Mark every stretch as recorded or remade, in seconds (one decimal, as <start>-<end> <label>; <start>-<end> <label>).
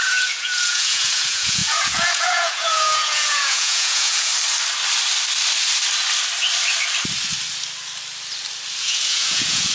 0.0-4.3 remade; 4.3-8.8 recorded; 8.8-9.7 remade